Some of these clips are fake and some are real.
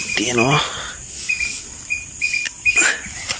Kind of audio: real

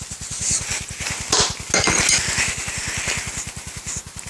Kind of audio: real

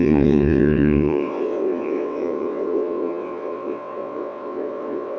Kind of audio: fake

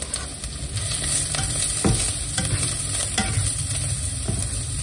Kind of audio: fake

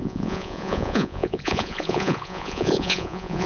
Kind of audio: fake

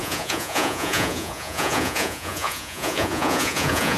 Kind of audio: fake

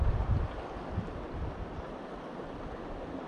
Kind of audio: real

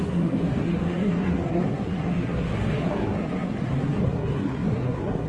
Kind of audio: fake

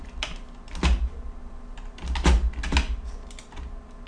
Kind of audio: real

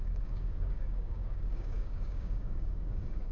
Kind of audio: fake